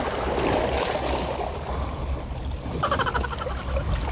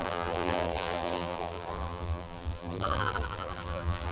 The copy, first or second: second